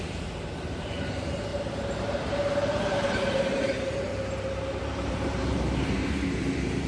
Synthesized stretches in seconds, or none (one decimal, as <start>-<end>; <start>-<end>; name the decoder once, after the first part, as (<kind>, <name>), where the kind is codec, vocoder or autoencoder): 0.0-4.1 (vocoder, BigVGAN v2); 4.8-6.9